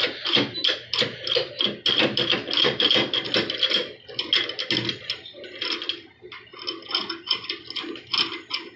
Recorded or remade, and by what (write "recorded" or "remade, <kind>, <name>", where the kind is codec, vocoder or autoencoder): recorded